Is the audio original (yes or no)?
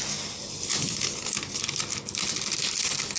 yes